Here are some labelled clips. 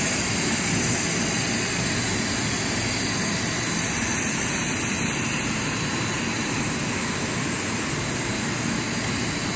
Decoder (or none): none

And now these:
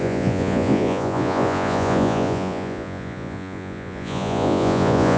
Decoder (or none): vocoder, Vocos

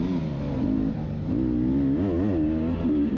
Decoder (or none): none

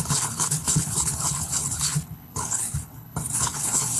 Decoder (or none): codec, HILCodec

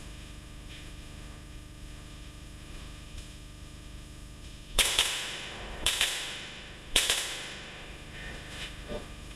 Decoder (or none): autoencoder, DAC-VAE